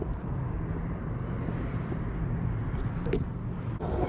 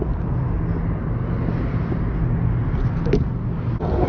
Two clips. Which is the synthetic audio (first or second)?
first